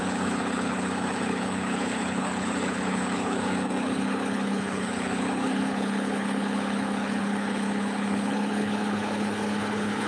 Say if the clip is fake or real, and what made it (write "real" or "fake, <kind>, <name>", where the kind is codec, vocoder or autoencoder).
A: fake, codec, HILCodec